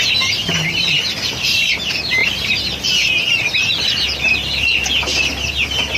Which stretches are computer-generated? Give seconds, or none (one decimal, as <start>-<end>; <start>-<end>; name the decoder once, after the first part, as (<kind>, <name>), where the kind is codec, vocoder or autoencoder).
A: none